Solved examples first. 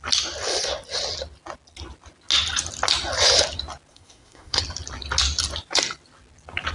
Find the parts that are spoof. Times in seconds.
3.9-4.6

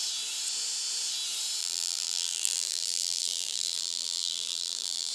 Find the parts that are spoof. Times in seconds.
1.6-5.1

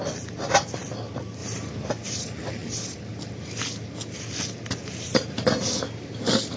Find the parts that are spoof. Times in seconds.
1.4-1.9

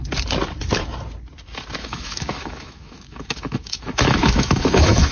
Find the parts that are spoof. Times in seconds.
1.8-5.1

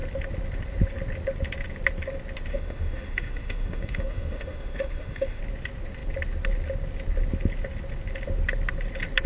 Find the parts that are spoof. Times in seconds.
2.5-5.4

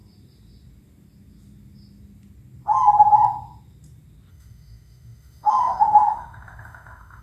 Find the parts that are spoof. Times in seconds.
4.3-7.2

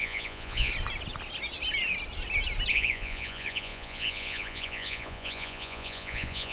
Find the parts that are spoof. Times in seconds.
0.0-0.7; 2.7-6.5

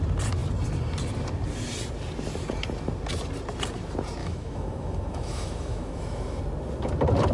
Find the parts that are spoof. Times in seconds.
4.2-6.4